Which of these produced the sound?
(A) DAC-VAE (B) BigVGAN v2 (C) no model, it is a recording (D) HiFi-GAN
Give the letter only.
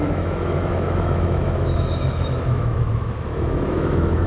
A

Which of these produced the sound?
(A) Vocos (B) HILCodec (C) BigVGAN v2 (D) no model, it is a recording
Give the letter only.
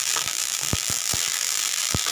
C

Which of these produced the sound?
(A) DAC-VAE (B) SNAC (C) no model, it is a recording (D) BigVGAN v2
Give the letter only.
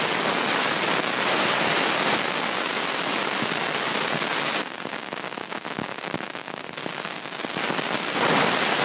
C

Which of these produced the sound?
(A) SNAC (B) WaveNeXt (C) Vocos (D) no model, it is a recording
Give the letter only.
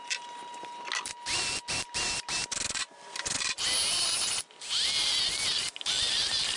D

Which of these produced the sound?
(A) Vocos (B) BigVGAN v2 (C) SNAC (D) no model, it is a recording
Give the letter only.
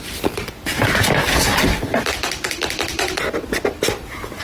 D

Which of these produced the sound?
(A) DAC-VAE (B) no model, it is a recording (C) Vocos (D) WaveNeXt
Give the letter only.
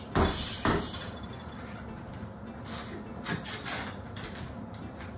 B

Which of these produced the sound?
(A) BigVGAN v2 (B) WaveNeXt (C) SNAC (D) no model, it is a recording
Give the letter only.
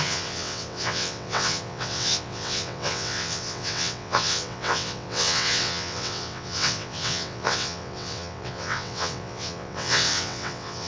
B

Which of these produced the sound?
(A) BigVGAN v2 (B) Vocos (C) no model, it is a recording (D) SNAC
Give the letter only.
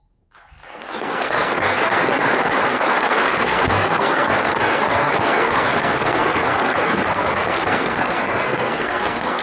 D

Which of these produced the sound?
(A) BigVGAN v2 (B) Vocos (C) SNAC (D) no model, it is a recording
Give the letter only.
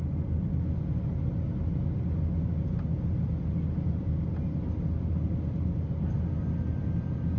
D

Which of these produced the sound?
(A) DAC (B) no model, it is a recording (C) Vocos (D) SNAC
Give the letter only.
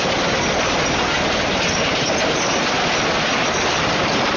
B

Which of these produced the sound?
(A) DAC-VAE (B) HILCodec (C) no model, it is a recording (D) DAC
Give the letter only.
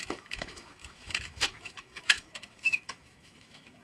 A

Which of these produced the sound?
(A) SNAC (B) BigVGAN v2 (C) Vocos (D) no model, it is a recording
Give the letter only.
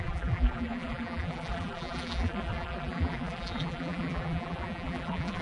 B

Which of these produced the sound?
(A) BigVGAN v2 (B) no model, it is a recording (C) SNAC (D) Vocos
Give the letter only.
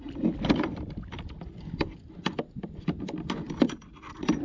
B